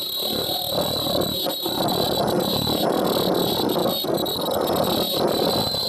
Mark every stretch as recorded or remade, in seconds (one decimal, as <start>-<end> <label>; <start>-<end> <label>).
0.0-5.9 recorded